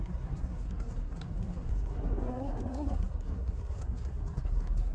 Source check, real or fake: fake